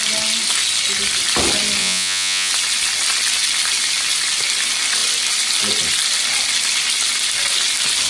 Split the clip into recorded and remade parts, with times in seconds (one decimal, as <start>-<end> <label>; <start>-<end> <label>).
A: 0.0-1.8 recorded; 1.8-2.5 remade; 2.5-8.1 recorded